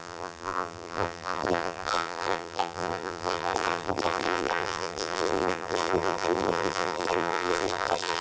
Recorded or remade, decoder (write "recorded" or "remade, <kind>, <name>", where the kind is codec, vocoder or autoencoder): remade, vocoder, BigVGAN v2